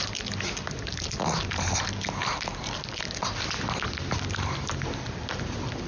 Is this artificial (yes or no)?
no